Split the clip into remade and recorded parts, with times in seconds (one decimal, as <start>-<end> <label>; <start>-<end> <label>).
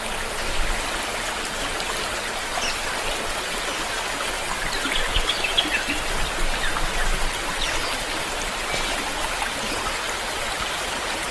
0.0-11.3 recorded